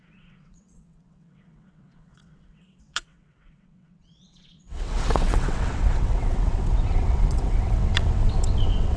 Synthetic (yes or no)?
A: yes